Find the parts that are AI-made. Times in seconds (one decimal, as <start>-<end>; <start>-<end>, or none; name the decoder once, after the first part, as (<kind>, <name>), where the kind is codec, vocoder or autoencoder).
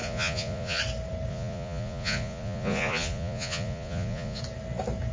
0.0-0.8 (vocoder, Vocos); 1.3-4.4